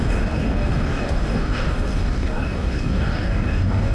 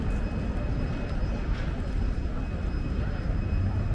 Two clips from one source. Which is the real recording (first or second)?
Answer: second